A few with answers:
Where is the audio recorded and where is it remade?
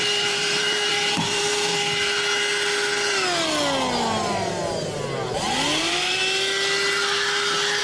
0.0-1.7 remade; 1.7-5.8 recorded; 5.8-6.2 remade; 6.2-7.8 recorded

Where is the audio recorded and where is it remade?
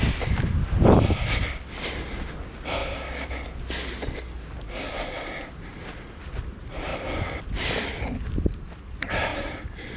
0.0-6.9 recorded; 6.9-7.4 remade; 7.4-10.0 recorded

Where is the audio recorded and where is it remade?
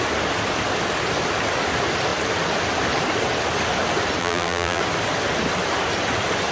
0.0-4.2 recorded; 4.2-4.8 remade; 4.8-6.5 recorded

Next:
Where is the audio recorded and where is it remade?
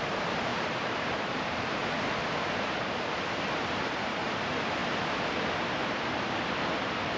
0.0-1.8 remade; 1.8-3.6 recorded; 3.6-7.2 remade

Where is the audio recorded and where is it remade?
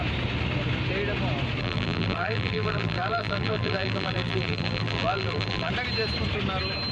0.0-1.6 recorded; 1.6-5.7 remade; 5.7-6.9 recorded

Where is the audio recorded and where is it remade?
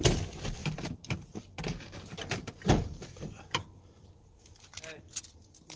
0.0-0.6 recorded; 0.6-4.1 remade; 4.1-5.8 recorded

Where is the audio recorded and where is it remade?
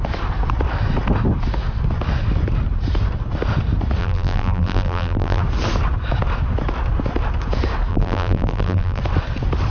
0.0-4.0 recorded; 4.0-5.4 remade; 5.4-7.9 recorded; 7.9-9.0 remade; 9.0-9.7 recorded